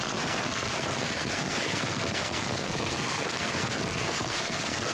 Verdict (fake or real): fake